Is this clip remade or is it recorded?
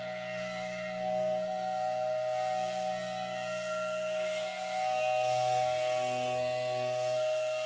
remade